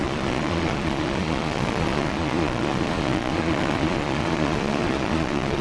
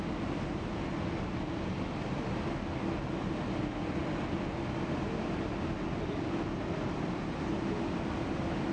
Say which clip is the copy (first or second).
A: first